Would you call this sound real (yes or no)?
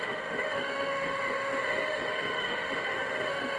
no